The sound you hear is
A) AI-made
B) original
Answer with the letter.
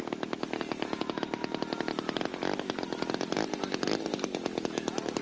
B